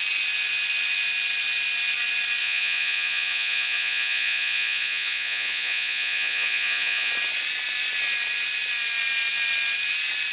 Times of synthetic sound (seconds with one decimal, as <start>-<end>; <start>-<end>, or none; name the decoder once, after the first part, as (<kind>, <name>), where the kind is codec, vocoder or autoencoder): 2.4-7.1 (vocoder, Vocos)